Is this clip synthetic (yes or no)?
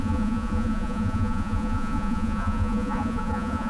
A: yes